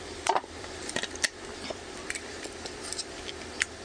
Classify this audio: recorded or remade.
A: remade